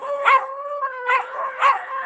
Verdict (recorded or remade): remade